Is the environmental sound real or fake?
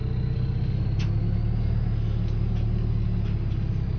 real